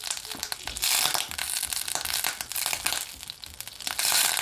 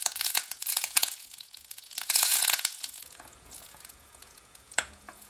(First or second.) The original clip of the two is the first